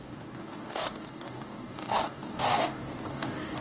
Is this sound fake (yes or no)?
yes